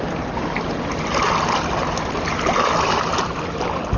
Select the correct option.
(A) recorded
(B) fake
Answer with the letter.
A